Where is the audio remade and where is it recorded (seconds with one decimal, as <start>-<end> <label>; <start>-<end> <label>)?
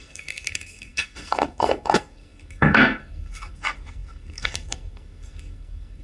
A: 0.0-6.0 remade